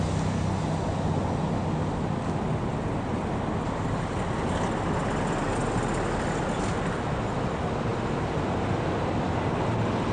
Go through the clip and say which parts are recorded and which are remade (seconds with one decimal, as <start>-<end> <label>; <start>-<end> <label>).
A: 0.0-10.1 recorded